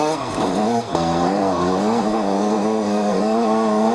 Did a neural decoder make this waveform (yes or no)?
yes